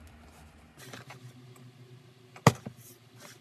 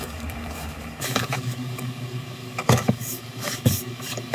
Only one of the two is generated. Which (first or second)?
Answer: second